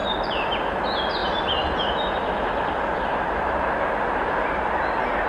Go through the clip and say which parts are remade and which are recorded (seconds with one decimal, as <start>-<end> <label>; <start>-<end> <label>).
0.0-0.7 remade; 0.7-3.1 recorded; 3.1-4.3 remade; 4.3-5.3 recorded